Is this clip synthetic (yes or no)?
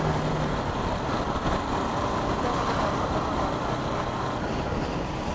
no